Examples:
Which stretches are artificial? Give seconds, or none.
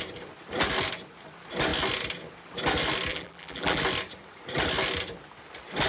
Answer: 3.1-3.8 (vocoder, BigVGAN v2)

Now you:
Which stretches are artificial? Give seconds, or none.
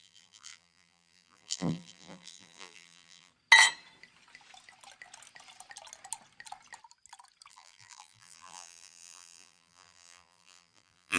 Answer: 0.0-3.3 (vocoder, BigVGAN v2); 7.5-11.2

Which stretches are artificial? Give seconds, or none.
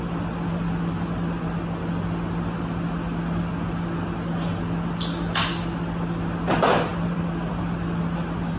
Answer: 6.9-7.6 (vocoder, BigVGAN v2)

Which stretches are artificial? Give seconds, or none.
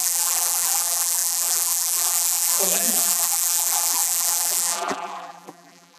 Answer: 0.0-6.0 (vocoder, BigVGAN v2)